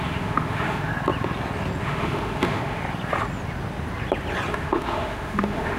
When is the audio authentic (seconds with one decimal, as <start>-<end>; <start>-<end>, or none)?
0.9-1.8; 2.8-4.5